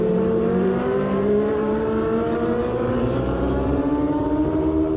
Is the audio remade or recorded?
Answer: remade